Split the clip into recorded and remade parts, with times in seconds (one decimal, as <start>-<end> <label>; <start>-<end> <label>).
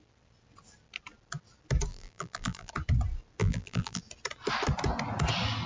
0.0-1.9 recorded; 1.9-2.7 remade; 2.7-3.4 recorded; 3.4-4.0 remade; 4.0-5.7 recorded